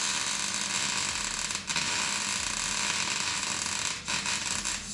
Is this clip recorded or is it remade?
recorded